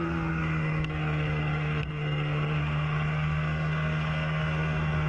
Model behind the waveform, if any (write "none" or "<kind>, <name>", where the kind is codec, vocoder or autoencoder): codec, SNAC